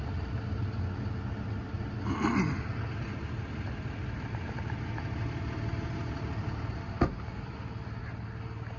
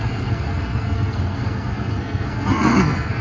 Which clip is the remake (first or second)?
second